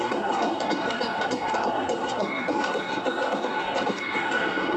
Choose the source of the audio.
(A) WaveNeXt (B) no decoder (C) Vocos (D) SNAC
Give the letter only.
D